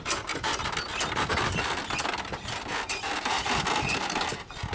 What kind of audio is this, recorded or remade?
recorded